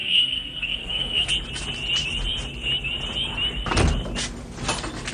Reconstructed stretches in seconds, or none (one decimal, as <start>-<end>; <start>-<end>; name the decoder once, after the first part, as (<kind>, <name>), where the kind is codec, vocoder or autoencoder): 0.0-1.3 (codec, SNAC)